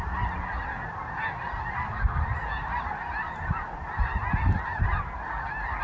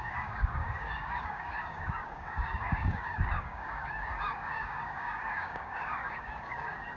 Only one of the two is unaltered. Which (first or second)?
first